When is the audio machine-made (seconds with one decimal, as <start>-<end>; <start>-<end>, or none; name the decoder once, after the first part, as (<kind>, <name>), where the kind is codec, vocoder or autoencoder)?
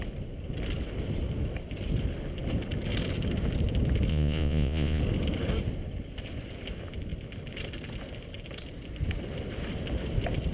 4.1-5.0 (vocoder, Vocos)